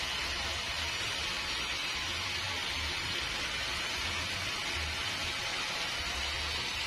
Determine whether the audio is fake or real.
real